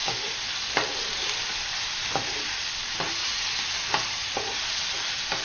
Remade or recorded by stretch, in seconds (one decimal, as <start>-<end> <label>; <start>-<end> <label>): 0.0-5.4 recorded